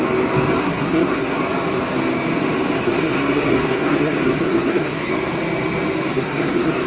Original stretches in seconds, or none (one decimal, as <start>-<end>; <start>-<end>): 0.0-0.6; 1.4-2.8; 5.1-6.1